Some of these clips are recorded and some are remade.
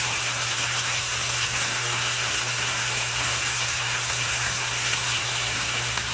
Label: remade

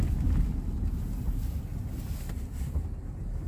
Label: recorded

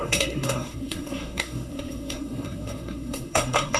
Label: remade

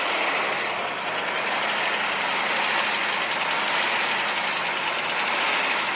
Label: recorded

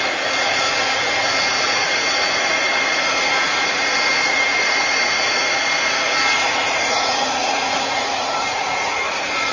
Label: remade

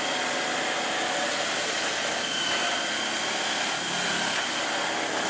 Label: recorded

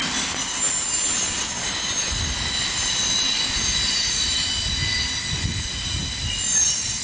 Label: recorded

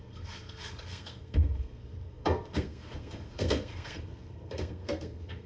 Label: remade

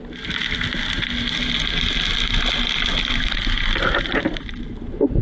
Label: recorded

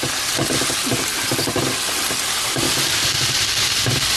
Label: recorded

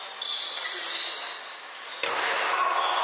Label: recorded